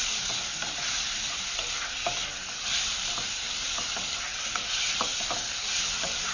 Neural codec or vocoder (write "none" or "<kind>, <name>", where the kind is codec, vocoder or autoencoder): none